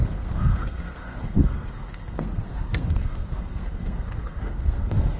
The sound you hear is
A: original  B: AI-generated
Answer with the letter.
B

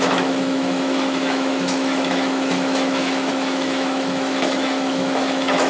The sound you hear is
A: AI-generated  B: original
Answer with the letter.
A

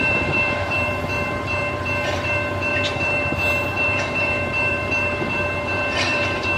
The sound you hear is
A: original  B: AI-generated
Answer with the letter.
B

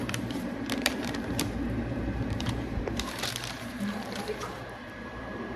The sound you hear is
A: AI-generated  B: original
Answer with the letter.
A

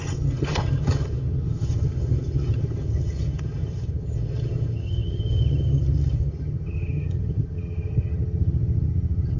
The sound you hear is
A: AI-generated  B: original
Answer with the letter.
A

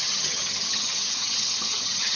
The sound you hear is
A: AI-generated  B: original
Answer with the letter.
A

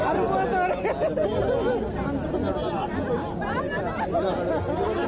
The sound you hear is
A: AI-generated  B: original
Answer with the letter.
B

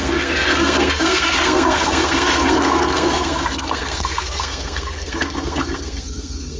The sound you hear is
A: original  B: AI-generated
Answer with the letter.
B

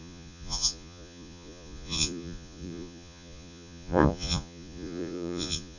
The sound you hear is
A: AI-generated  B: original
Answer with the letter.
A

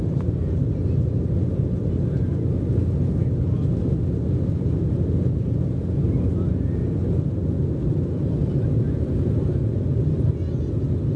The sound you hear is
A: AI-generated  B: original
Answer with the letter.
B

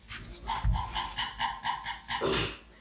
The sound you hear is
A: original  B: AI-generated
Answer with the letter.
A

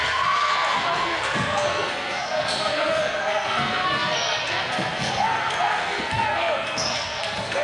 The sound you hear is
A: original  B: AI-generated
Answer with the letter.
B